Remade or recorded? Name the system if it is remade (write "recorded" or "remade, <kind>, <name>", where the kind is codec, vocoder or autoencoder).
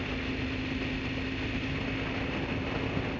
recorded